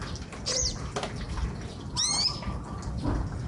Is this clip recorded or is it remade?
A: recorded